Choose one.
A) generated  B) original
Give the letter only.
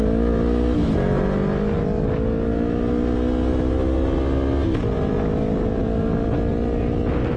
B